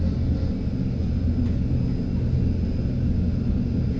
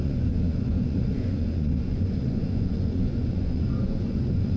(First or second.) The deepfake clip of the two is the second